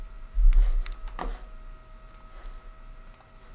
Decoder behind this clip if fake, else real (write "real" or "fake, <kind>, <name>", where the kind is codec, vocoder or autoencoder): real